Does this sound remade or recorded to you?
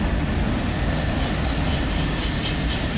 recorded